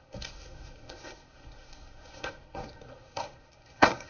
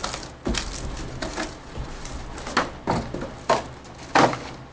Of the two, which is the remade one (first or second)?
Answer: first